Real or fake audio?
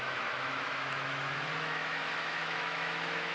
fake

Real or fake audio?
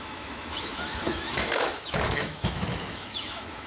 fake